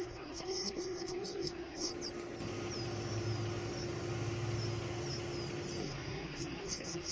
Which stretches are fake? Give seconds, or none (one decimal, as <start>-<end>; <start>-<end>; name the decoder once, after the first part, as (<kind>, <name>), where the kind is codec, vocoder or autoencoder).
0.0-1.9 (codec, SNAC); 5.8-7.1